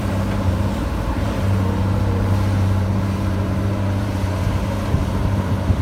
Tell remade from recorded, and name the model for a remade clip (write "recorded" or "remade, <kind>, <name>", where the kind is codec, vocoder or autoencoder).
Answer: remade, vocoder, BigVGAN v2